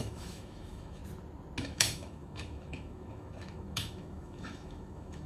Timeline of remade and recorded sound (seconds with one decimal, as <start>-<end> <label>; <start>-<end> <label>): 0.0-1.0 remade; 1.0-1.6 recorded; 1.6-5.3 remade